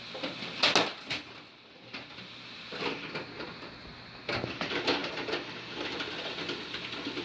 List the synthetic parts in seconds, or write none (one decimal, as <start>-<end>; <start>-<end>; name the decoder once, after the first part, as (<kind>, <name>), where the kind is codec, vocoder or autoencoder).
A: none